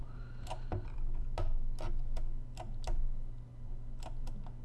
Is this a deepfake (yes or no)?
no